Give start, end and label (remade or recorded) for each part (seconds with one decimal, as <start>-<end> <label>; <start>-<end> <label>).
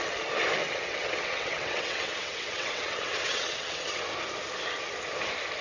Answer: 0.0-0.6 recorded; 0.6-4.0 remade; 4.0-5.6 recorded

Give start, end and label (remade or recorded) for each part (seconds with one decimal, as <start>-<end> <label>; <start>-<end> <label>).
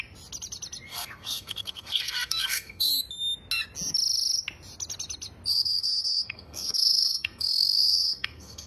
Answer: 0.0-0.9 recorded; 0.9-2.9 remade; 2.9-5.5 recorded; 5.5-8.7 remade